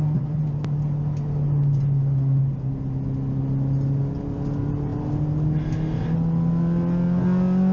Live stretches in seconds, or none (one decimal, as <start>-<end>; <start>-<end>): 0.0-7.7